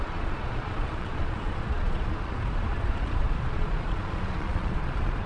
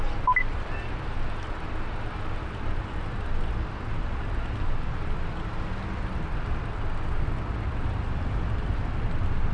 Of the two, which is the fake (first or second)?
first